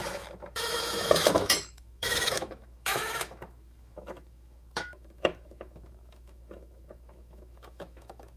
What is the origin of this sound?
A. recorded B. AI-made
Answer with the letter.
B